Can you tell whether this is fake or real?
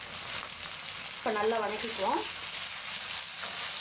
real